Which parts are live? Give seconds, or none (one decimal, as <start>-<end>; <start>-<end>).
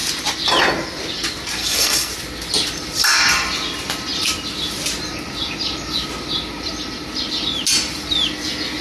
0.0-1.6; 2.1-8.8